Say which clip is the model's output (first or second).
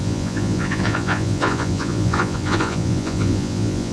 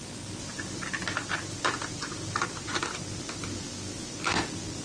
first